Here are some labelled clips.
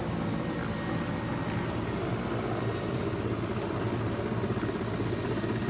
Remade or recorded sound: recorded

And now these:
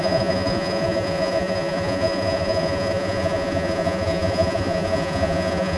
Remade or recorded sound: remade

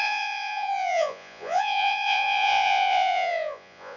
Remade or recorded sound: remade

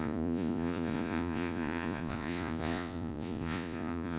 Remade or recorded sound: remade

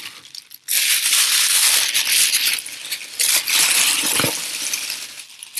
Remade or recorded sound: recorded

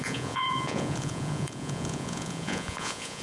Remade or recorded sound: remade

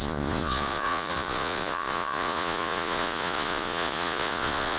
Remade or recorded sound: remade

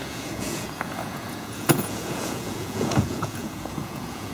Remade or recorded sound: remade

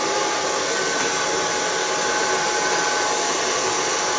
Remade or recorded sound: recorded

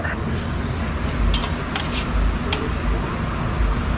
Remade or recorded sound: recorded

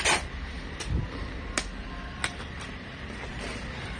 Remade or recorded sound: recorded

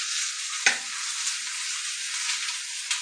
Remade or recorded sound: recorded